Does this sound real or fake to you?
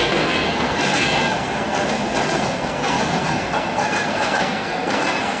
fake